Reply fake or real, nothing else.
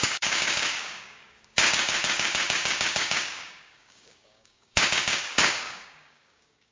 fake